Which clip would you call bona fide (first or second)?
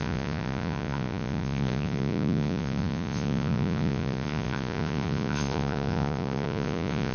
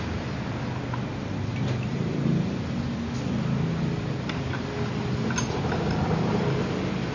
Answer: second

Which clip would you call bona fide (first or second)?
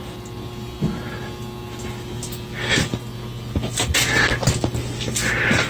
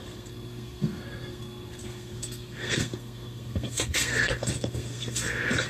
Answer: first